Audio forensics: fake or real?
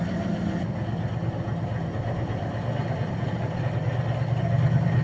real